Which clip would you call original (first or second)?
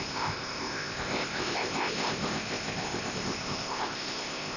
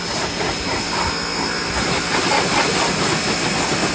second